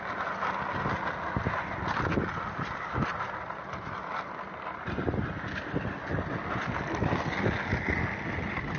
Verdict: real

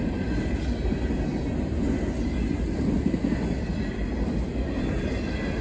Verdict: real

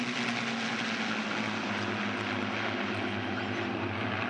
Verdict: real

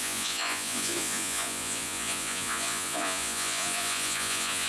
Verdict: fake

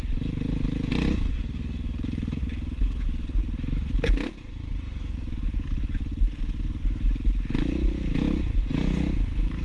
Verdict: real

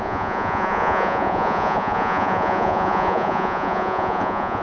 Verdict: fake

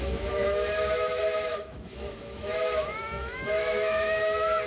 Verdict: fake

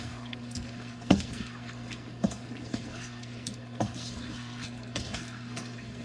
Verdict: fake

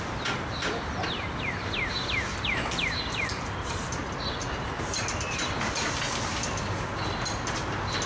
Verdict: real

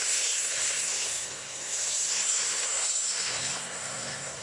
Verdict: fake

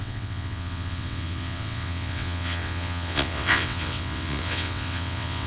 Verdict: fake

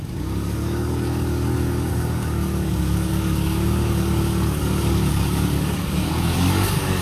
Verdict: fake